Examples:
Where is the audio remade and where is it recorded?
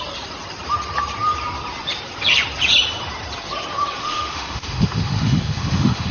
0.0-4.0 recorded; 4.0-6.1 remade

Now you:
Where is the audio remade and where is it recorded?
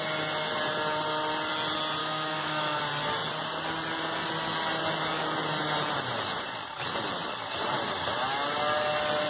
0.0-2.0 recorded; 2.0-2.8 remade; 2.8-9.3 recorded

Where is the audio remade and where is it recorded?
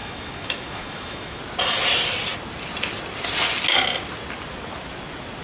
0.0-1.4 remade; 1.4-5.4 recorded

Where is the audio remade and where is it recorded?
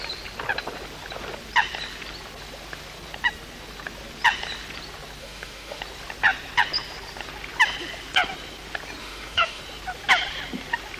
0.0-5.2 recorded; 5.2-5.8 remade; 5.8-9.0 recorded; 9.0-9.6 remade; 9.6-11.0 recorded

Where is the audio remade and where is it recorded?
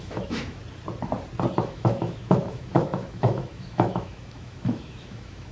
0.0-0.6 remade; 0.6-1.6 recorded; 1.6-5.5 remade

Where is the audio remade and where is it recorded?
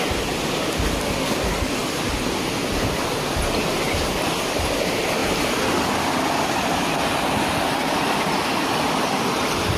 0.0-9.8 recorded